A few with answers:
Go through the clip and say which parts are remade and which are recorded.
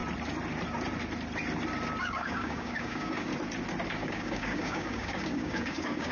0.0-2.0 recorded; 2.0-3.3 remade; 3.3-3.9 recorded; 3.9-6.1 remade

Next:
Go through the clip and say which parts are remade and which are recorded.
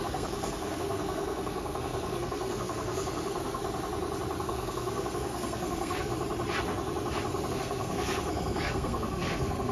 0.0-3.6 remade; 3.6-4.4 recorded; 4.4-6.1 remade; 6.1-7.5 recorded; 7.5-9.7 remade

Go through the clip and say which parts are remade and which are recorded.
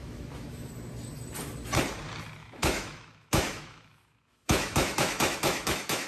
0.0-0.7 remade; 0.7-2.4 recorded; 2.4-6.1 remade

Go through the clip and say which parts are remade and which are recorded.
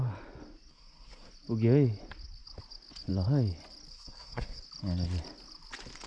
0.0-0.7 recorded; 0.7-1.3 remade; 1.3-3.9 recorded; 3.9-4.6 remade; 4.6-6.1 recorded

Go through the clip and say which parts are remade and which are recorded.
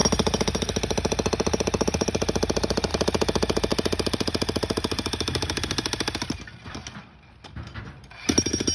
0.0-8.7 recorded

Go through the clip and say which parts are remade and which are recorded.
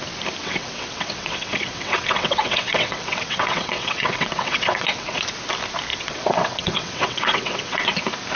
0.0-0.4 recorded; 0.4-5.2 remade; 5.2-5.9 recorded; 5.9-8.0 remade; 8.0-8.4 recorded